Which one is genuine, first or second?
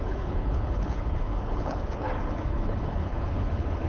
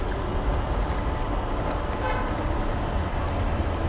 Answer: second